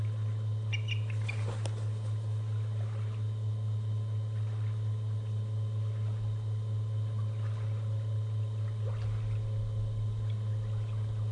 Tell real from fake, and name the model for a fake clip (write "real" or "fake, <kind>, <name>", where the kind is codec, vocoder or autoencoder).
real